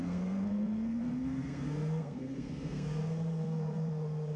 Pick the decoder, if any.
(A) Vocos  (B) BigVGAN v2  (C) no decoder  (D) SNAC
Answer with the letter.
D